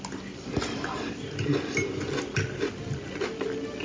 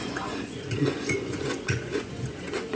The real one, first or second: first